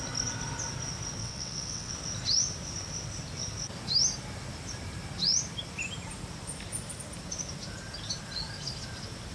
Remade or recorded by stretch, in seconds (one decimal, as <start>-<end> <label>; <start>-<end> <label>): 0.0-1.2 recorded; 1.2-1.9 remade; 1.9-9.3 recorded